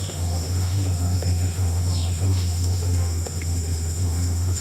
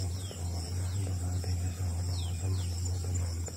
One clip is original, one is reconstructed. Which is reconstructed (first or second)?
first